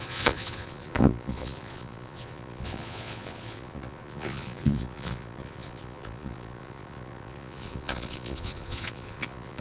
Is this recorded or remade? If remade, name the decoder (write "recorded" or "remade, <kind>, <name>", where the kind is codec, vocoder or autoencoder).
remade, vocoder, Vocos